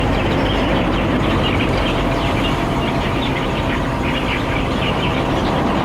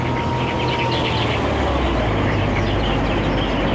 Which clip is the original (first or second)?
second